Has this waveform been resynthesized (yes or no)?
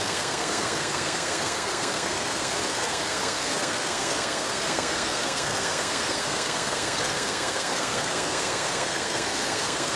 yes